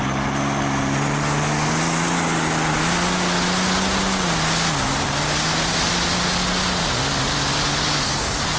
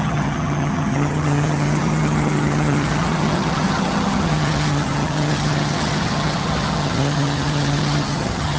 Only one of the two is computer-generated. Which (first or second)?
second